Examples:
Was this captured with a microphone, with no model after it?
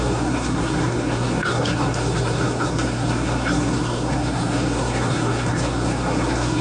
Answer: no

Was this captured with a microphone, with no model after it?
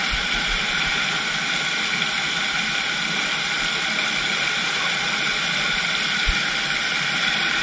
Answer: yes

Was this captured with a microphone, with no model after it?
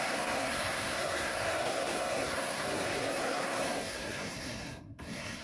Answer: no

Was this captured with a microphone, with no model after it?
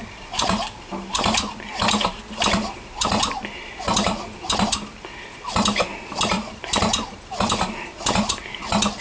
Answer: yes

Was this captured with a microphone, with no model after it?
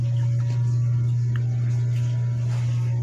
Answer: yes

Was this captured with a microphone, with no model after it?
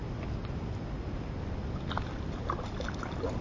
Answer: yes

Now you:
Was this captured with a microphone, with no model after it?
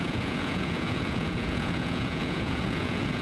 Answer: no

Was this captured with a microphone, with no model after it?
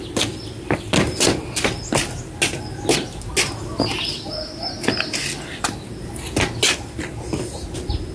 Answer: yes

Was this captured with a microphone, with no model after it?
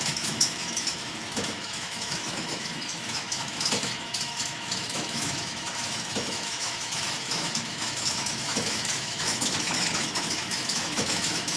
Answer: no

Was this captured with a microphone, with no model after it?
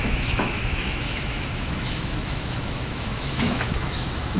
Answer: no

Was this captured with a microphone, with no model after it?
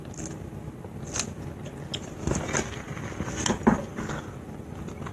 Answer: yes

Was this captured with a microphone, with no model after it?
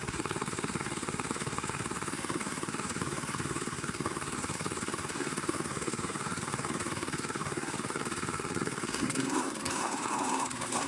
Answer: no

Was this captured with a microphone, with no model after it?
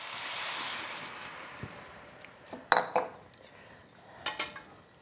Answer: yes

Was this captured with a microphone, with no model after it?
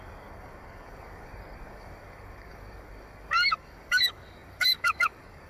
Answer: no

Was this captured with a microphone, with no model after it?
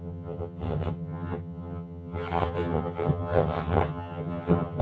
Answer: no